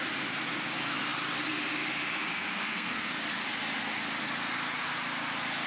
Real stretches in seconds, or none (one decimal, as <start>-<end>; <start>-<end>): 0.0-2.3; 3.1-5.7